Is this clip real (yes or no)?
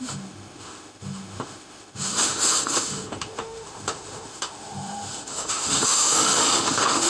no